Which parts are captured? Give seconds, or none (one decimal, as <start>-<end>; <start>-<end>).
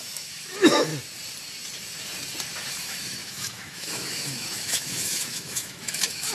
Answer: 0.9-2.7